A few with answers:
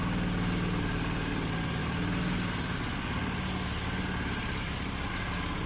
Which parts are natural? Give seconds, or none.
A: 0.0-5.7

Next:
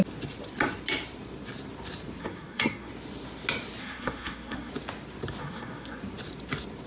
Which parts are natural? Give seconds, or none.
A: 0.0-2.2; 2.9-3.8; 4.7-5.4; 6.0-6.9